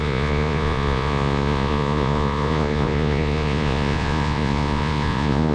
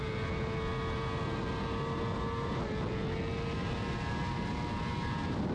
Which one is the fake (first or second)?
first